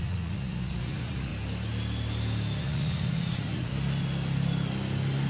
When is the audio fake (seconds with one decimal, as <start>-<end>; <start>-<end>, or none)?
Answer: 0.0-1.3; 2.6-3.7